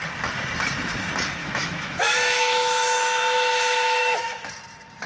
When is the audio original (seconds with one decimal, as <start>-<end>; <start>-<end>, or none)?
0.0-1.4; 4.5-5.1

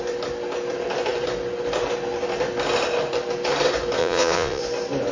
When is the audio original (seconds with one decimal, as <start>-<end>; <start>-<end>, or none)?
0.0-4.0; 4.6-5.1

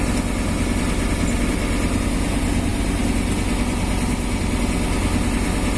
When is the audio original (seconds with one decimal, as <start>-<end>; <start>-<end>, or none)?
0.0-5.8

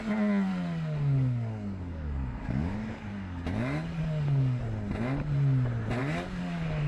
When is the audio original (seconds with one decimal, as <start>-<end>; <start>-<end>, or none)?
0.0-0.5; 4.6-6.0